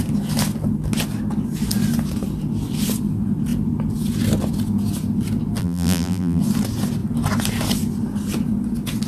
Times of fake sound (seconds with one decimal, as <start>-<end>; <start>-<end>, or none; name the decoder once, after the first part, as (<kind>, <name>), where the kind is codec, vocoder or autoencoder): 5.6-6.4 (vocoder, BigVGAN v2)

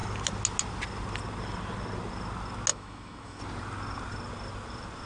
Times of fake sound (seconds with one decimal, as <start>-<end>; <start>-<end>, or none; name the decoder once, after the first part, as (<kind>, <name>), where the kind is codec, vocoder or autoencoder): 2.7-3.4 (autoencoder, DAC-VAE)

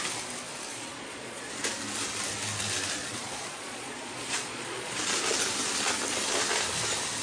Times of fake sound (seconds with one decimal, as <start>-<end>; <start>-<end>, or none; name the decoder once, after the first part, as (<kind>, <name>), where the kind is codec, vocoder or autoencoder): 0.7-1.6 (vocoder, Vocos); 3.0-5.1

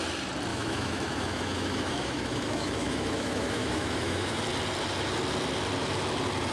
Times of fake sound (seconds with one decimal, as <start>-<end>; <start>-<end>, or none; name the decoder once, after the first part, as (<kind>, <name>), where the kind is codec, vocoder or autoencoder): 0.5-4.4 (autoencoder, DAC-VAE)

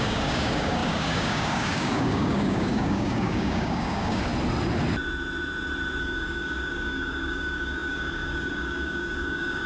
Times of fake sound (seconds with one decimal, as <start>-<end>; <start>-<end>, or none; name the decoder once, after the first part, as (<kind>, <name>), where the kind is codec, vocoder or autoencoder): 0.0-4.3 (codec, DAC); 6.0-9.7

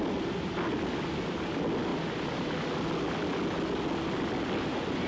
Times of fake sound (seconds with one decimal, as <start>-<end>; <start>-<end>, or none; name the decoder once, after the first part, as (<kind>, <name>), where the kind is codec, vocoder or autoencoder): none

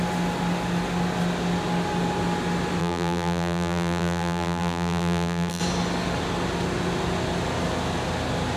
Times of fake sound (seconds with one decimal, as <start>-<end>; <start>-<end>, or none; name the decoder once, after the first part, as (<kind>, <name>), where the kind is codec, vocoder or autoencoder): 2.8-5.6 (vocoder, BigVGAN v2)

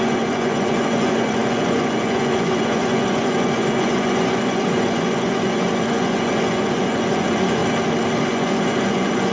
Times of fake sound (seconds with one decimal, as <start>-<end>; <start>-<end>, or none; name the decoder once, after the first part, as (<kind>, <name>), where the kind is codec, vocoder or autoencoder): 0.0-7.6 (vocoder, Vocos); 8.3-9.3